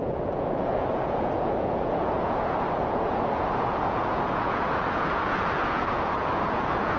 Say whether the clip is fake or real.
fake